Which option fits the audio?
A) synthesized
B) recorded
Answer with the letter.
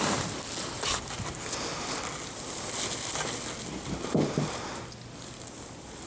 B